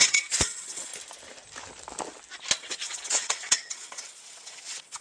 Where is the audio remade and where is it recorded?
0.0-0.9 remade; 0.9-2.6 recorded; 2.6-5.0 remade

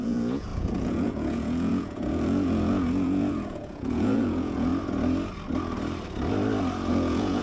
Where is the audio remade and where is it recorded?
0.0-4.7 remade; 4.7-6.9 recorded; 6.9-7.4 remade

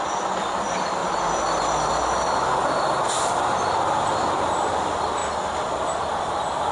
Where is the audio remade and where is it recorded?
0.0-6.7 recorded

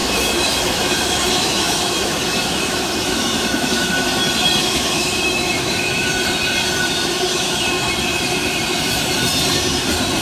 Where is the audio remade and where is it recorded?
0.0-3.9 remade; 3.9-4.6 recorded; 4.6-6.1 remade; 6.1-7.3 recorded; 7.3-7.9 remade; 7.9-10.2 recorded

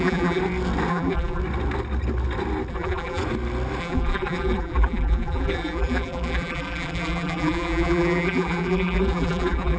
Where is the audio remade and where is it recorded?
0.0-0.4 remade; 0.4-0.9 recorded; 0.9-1.4 remade; 1.4-2.7 recorded; 2.7-3.2 remade; 3.2-3.8 recorded; 3.8-9.8 remade

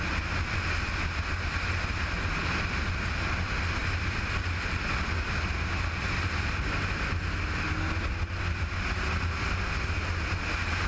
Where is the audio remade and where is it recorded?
0.0-10.9 recorded

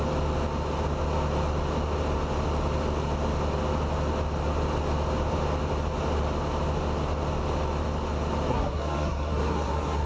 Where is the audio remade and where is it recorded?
0.0-8.5 recorded; 8.5-10.1 remade